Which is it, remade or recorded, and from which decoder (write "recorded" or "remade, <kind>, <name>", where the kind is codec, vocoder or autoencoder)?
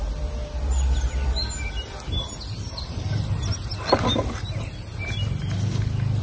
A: recorded